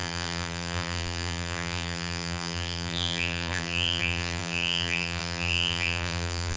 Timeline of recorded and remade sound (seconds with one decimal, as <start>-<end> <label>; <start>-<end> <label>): 0.0-6.6 remade